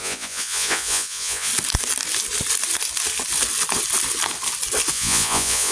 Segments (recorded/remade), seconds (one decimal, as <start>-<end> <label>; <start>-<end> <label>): 0.0-1.5 remade; 1.5-4.9 recorded; 4.9-5.7 remade